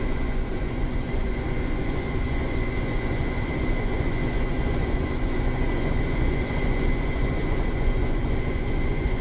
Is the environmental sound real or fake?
fake